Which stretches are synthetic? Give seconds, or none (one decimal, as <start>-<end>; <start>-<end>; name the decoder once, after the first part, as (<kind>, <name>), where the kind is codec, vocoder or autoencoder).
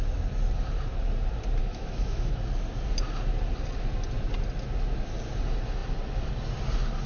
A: 1.6-2.4 (autoencoder, DAC-VAE)